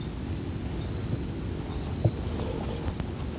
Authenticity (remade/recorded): recorded